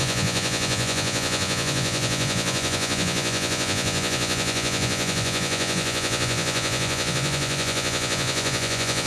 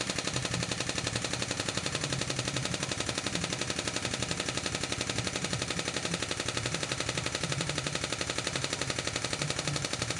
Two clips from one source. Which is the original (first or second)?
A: second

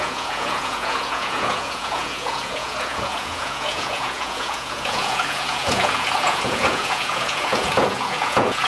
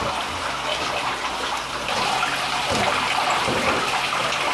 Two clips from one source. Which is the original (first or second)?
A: second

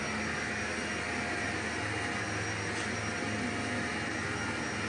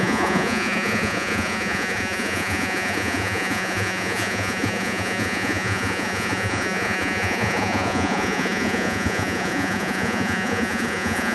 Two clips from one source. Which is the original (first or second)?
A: first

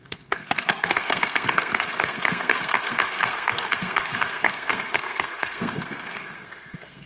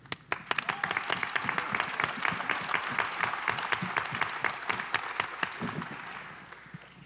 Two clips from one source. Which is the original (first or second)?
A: second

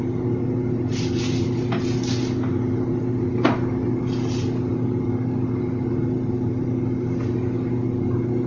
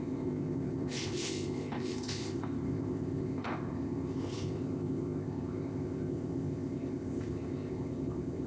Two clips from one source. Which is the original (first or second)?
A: first